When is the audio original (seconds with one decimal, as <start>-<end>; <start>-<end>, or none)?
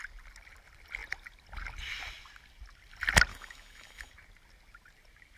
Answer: 0.0-3.3; 4.1-5.4